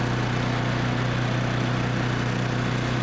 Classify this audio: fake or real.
real